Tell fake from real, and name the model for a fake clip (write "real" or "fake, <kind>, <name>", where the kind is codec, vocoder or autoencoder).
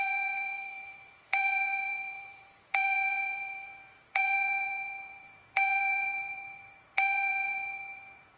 fake, vocoder, Vocos